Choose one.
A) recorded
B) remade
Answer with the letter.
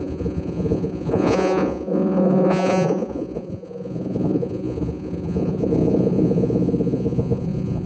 B